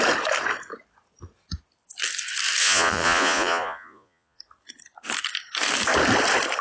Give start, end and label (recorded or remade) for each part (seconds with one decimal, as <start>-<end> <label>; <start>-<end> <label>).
0.0-2.6 recorded; 2.6-4.4 remade; 4.4-6.6 recorded